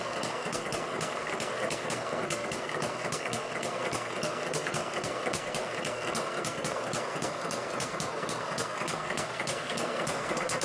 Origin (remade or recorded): remade